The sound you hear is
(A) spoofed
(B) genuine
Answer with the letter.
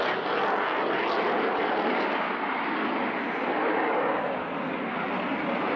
B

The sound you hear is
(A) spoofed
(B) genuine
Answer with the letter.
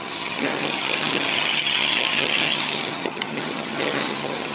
A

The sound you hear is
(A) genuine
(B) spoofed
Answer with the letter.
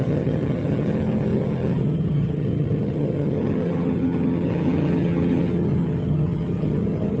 B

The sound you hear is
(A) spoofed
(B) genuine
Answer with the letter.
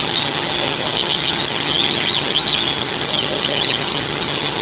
A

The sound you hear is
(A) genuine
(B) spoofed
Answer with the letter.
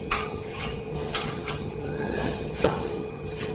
B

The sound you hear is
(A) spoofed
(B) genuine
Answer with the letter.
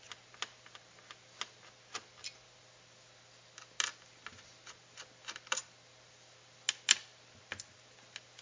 B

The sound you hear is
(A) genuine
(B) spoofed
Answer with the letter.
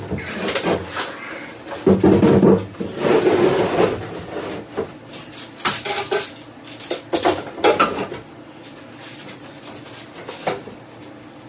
A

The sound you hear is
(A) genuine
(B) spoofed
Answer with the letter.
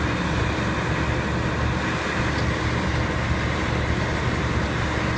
A